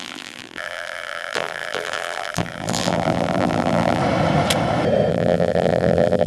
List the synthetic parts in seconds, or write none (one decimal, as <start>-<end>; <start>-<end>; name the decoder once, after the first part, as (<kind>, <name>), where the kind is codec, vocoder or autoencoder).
0.0-4.0 (vocoder, BigVGAN v2); 5.1-6.3